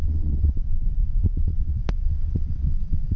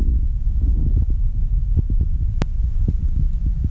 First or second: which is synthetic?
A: first